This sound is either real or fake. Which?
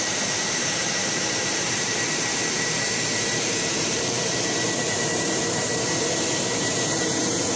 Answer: fake